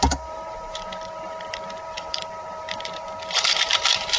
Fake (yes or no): yes